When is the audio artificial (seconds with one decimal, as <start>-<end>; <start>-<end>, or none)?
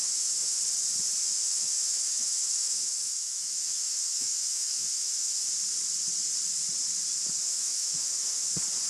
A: 0.0-0.6; 1.2-5.5; 7.4-8.5